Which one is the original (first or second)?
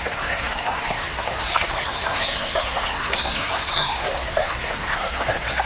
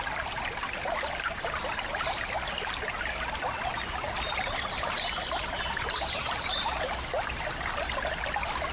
second